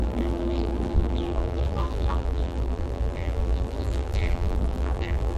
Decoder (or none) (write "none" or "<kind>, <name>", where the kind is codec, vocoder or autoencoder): vocoder, BigVGAN v2